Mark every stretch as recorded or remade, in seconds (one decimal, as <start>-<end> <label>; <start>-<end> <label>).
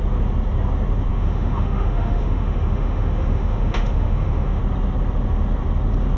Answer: 0.0-1.1 recorded; 1.1-4.6 remade; 4.6-6.2 recorded